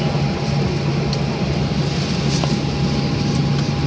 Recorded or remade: recorded